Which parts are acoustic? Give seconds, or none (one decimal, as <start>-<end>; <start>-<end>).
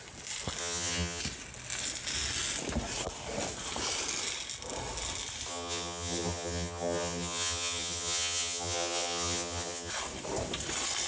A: 0.0-0.6; 1.2-5.5; 9.9-11.1